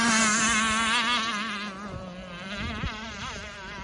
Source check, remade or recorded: recorded